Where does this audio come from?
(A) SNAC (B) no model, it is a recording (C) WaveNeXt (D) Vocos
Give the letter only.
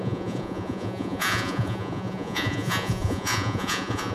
D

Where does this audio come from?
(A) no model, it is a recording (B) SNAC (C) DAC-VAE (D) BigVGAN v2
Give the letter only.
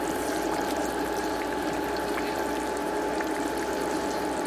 D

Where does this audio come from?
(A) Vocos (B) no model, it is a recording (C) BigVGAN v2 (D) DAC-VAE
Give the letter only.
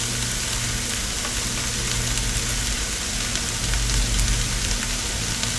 B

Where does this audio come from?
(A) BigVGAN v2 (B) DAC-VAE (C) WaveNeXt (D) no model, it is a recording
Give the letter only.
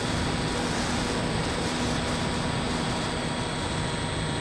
D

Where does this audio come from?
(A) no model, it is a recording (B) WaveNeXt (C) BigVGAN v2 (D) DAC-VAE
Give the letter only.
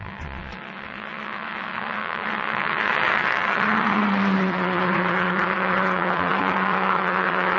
B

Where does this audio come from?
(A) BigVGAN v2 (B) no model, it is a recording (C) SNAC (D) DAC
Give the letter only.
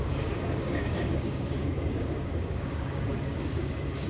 D